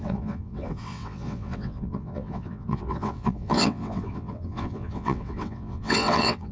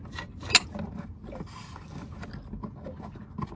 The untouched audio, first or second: second